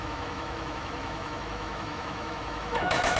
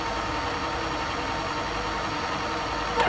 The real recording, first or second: second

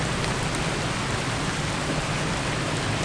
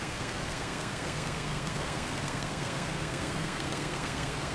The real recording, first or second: first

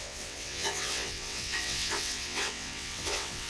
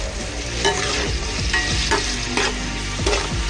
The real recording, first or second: second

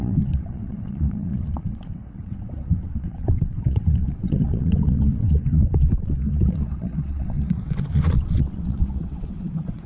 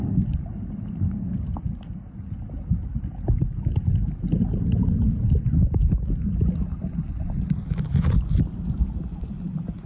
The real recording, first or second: second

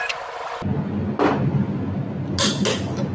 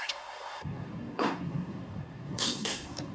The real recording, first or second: first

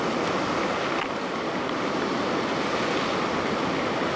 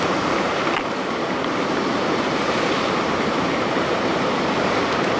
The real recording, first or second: first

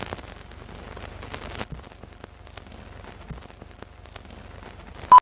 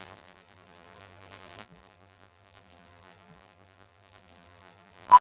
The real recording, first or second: first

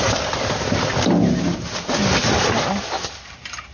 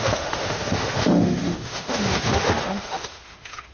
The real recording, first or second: first